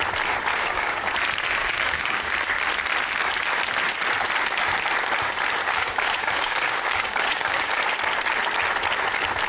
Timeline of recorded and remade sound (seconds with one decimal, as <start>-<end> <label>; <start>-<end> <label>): 0.0-0.5 recorded; 0.5-1.1 remade; 1.1-1.6 recorded; 1.6-2.3 remade; 2.3-5.6 recorded; 5.6-7.7 remade; 7.7-9.5 recorded